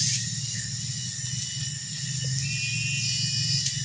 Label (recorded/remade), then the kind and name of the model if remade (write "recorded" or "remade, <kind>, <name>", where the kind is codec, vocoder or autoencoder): recorded